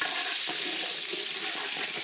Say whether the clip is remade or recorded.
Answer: recorded